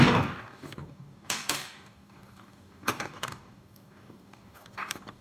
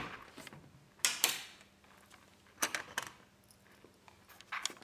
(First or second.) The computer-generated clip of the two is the first